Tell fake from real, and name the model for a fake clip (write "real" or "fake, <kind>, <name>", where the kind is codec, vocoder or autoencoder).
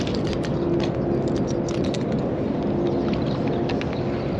real